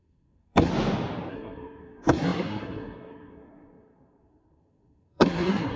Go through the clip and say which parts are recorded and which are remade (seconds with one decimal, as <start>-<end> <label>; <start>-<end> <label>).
0.0-0.7 remade; 0.7-1.3 recorded; 1.3-5.8 remade